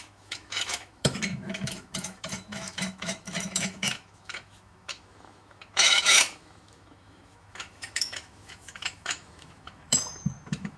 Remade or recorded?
remade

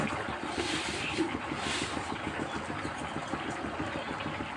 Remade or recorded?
recorded